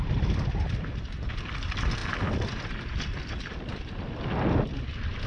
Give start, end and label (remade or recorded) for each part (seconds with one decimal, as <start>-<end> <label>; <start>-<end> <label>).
0.0-2.0 recorded; 2.0-4.2 remade; 4.2-5.3 recorded